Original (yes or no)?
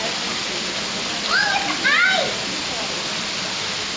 yes